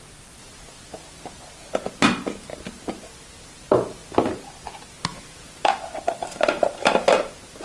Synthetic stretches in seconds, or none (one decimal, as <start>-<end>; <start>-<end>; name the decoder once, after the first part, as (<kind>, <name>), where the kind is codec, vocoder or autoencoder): 5.1-5.7 (vocoder, Vocos)